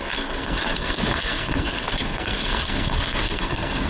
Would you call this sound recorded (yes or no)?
no